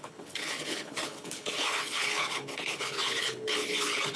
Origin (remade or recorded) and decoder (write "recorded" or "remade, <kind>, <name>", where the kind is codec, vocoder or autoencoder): remade, codec, HILCodec